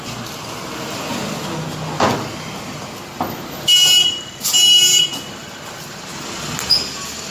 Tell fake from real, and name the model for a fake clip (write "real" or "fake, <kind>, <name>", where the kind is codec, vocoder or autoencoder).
real